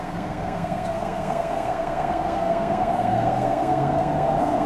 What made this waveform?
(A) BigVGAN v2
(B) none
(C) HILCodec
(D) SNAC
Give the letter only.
D